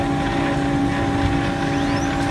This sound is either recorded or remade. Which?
recorded